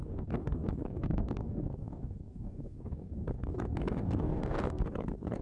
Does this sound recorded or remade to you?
remade